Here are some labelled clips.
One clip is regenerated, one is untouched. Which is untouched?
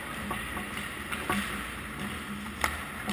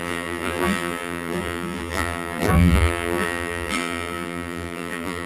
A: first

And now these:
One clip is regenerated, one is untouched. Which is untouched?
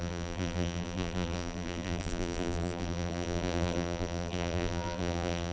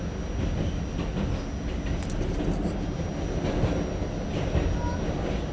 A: second